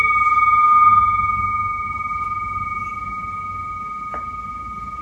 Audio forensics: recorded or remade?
recorded